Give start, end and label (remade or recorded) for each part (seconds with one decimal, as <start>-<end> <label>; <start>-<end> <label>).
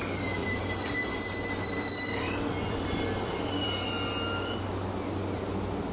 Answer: 0.0-0.4 recorded; 0.4-3.9 remade; 3.9-5.9 recorded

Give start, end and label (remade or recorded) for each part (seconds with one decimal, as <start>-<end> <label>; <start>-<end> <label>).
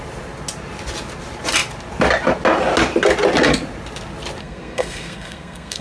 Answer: 0.0-4.4 recorded; 4.4-5.8 remade